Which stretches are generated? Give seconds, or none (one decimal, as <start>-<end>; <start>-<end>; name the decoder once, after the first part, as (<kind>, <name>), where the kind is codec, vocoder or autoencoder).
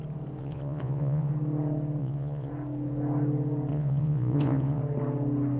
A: 0.4-1.3 (vocoder, Vocos); 2.0-2.5; 3.7-4.8